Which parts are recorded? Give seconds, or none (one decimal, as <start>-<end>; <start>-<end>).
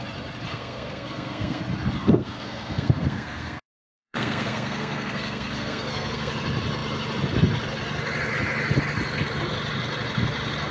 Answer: 0.0-0.5; 1.6-2.0; 6.3-10.7